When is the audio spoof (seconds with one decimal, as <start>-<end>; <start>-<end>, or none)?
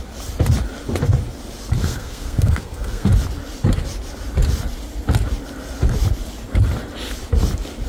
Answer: 1.8-3.1